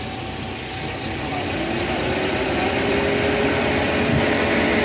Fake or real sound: real